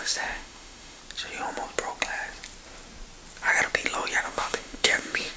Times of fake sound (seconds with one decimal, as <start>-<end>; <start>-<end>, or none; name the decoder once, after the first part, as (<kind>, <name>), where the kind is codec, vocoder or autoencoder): 0.0-1.0 (autoencoder, DAC-VAE); 4.2-5.4